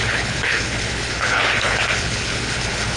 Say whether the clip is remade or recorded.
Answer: remade